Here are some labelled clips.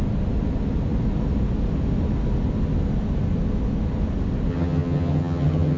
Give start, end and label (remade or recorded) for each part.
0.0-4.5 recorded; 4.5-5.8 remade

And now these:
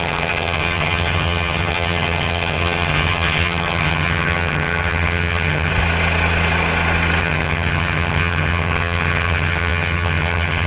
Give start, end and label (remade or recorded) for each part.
0.0-5.7 remade; 5.7-7.2 recorded; 7.2-10.7 remade

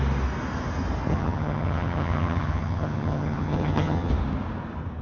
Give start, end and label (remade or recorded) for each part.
0.0-1.1 recorded; 1.1-4.1 remade; 4.1-5.0 recorded

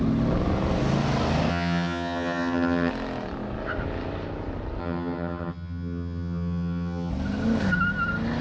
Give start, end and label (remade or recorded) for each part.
0.0-1.5 recorded; 1.5-2.9 remade; 2.9-4.8 recorded; 4.8-7.1 remade; 7.1-8.4 recorded

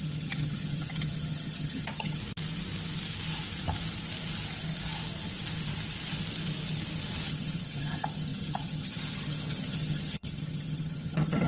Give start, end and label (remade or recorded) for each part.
0.0-2.2 remade; 2.2-7.3 recorded; 7.3-11.5 remade

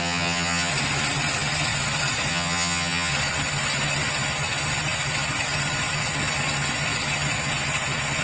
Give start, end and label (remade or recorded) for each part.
0.0-0.7 remade; 0.7-2.3 recorded; 2.3-3.1 remade; 3.1-8.2 recorded